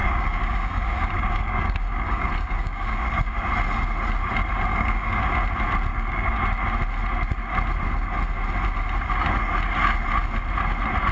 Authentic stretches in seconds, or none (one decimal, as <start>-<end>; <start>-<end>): 3.5-4.7; 5.2-5.9; 6.4-11.1